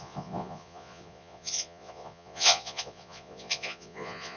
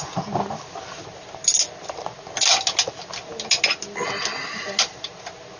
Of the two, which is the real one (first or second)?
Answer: second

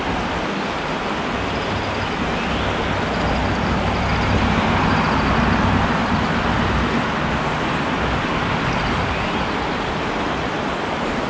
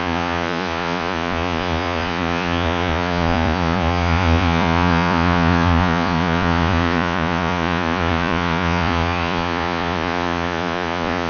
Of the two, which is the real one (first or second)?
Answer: first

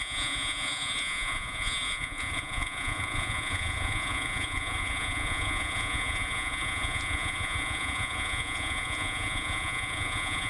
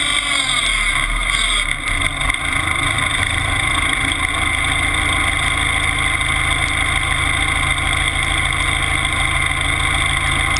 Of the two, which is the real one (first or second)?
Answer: second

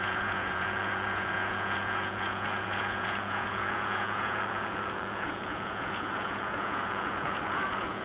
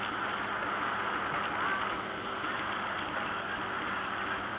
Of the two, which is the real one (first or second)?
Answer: second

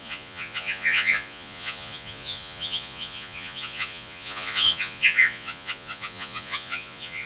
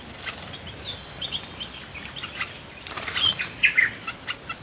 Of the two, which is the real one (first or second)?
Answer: second